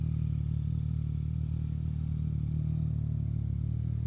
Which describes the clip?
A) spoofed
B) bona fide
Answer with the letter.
B